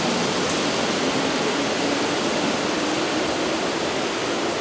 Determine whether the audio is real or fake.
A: real